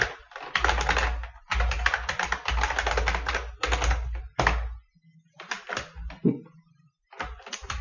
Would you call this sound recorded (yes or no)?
yes